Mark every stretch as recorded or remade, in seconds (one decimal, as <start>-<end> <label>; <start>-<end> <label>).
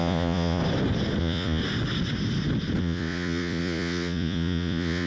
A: 0.0-0.6 remade; 0.6-1.2 recorded; 1.2-1.6 remade; 1.6-2.8 recorded; 2.8-5.1 remade